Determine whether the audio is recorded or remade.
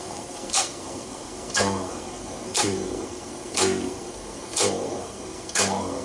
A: remade